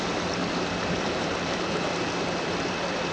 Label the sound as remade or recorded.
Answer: remade